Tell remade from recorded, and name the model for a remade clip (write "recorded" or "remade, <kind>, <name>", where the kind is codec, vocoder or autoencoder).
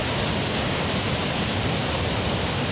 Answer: recorded